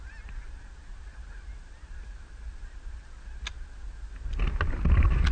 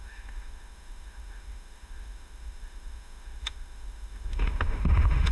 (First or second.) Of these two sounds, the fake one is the second